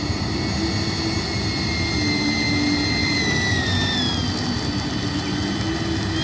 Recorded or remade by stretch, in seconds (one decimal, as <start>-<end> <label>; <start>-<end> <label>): 0.0-3.0 recorded; 3.0-4.0 remade; 4.0-6.2 recorded